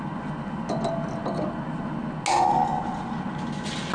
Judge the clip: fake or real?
real